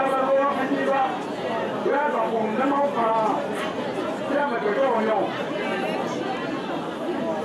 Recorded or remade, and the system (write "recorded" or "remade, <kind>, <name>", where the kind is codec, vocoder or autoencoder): recorded